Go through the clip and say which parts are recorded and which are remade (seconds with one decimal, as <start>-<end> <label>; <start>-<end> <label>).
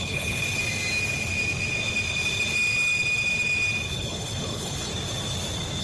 0.0-0.4 remade; 0.4-3.9 recorded; 3.9-4.9 remade; 4.9-5.8 recorded